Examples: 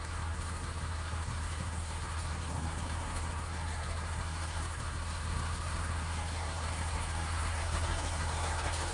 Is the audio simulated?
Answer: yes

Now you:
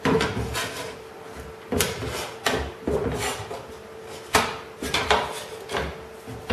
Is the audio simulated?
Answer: no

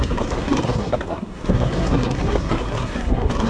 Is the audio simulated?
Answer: yes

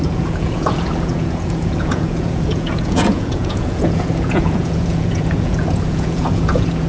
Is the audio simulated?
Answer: yes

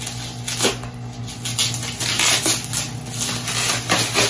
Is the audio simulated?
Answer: no